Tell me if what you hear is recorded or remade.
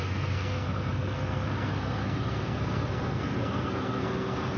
remade